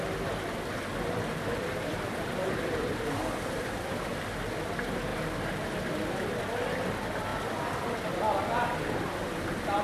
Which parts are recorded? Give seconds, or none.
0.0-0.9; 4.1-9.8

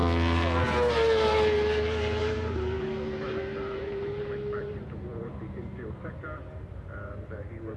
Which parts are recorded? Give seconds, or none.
0.0-0.9

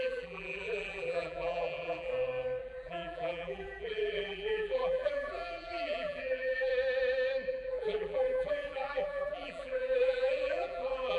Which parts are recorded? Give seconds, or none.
2.1-2.6; 6.7-7.5

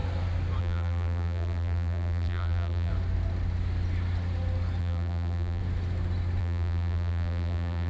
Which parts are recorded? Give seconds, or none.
0.0-0.6; 2.9-4.8; 5.6-6.4

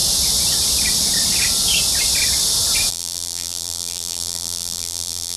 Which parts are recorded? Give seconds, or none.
0.0-2.9

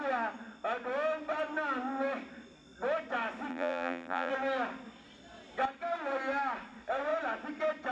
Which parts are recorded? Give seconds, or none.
0.0-3.5; 4.3-7.9

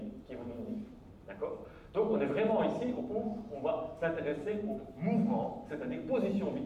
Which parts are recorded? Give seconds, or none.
0.0-4.3; 4.9-6.7

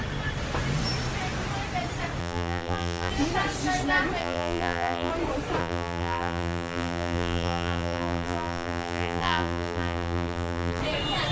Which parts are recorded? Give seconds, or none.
0.0-2.2; 3.1-4.2; 5.1-5.6; 10.8-11.3